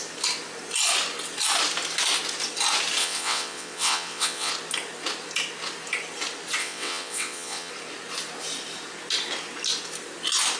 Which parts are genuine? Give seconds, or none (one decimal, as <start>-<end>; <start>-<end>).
0.0-3.0; 4.5-6.6; 7.7-10.6